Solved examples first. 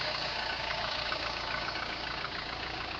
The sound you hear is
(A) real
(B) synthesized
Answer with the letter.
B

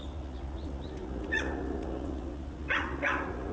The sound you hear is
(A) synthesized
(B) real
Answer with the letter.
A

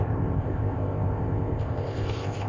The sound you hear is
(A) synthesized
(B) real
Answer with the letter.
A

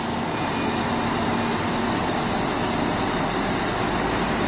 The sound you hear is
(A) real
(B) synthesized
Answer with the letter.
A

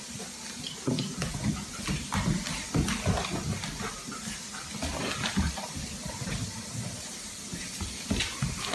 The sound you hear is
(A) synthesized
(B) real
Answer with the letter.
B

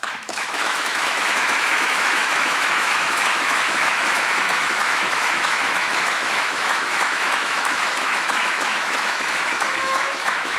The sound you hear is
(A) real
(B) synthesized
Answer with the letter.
B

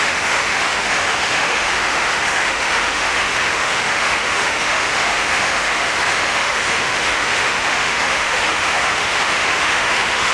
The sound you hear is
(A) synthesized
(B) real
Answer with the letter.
A